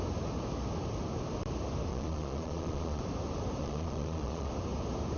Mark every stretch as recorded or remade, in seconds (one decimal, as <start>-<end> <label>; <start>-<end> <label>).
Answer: 0.0-1.9 recorded; 1.9-3.0 remade; 3.0-3.6 recorded; 3.6-4.5 remade; 4.5-5.2 recorded